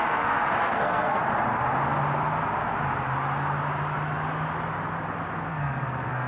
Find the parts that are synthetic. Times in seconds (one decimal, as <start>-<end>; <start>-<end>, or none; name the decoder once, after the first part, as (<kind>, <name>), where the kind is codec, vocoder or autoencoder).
0.0-1.2 (codec, SNAC); 5.5-6.3